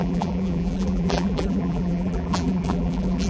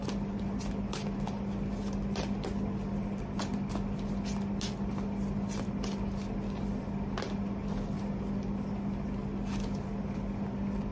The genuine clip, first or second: second